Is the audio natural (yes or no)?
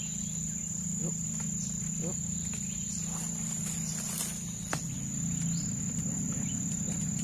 yes